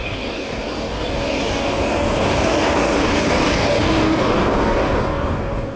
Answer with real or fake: fake